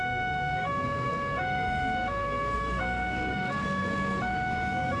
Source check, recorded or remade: remade